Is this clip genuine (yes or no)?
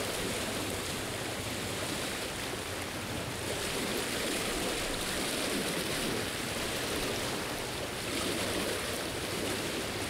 no